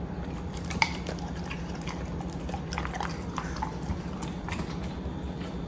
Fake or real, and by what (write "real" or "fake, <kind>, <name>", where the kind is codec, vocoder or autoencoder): fake, vocoder, BigVGAN v2